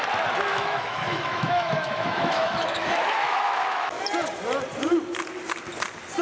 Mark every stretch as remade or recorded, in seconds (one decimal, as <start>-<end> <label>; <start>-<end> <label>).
0.0-0.5 recorded; 0.5-4.0 remade; 4.0-6.2 recorded